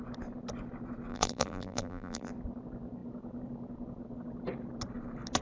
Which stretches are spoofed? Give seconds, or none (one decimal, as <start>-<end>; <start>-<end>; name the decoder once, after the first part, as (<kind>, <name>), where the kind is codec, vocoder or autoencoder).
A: 1.1-2.3 (vocoder, BigVGAN v2)